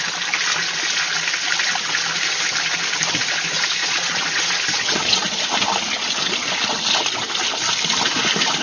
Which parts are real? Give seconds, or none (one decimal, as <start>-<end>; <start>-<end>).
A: 0.0-3.8; 5.4-8.6